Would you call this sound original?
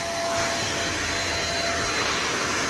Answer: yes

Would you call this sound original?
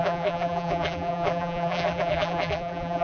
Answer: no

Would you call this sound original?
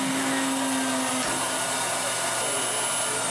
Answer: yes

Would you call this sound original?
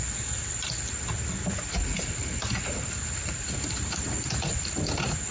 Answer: no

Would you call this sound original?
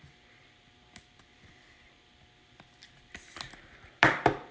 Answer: no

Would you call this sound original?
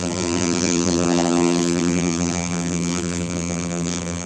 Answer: no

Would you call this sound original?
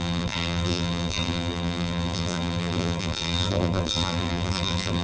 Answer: no